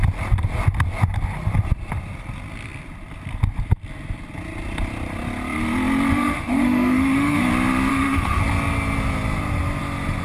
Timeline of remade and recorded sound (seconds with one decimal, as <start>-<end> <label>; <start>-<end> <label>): 0.0-6.1 recorded; 6.1-7.5 remade; 7.5-7.9 recorded; 7.9-8.4 remade; 8.4-10.2 recorded